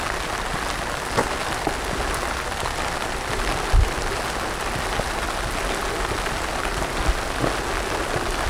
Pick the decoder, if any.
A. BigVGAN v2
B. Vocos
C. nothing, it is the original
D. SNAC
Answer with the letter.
C